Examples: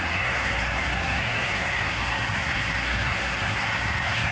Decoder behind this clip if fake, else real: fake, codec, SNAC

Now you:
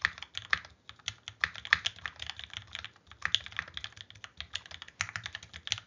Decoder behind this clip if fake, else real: real